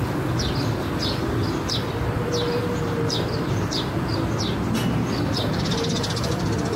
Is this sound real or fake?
real